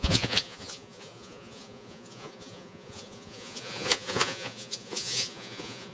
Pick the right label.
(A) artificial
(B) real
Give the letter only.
A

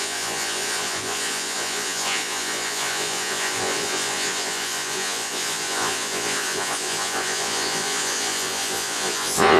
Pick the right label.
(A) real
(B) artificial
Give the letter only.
B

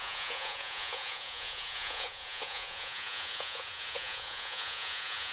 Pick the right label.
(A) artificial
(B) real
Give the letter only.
A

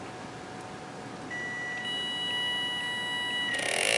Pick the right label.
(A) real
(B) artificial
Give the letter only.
A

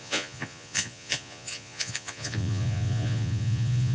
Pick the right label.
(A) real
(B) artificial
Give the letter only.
B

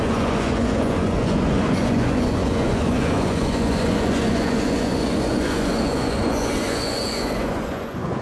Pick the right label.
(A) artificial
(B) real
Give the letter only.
A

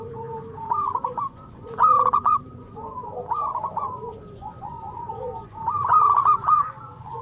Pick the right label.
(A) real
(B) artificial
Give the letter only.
B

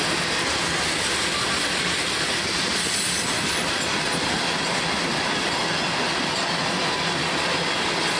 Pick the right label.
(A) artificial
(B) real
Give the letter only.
B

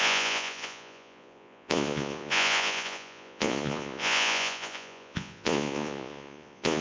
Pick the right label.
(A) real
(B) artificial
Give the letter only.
B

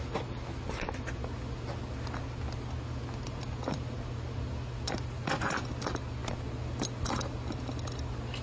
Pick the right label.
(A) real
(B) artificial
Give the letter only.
A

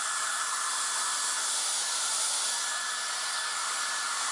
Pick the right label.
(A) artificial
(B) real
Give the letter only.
B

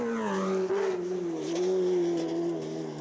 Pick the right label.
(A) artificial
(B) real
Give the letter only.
B